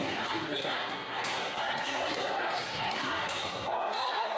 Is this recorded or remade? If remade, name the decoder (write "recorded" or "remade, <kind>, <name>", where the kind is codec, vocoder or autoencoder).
remade, codec, SNAC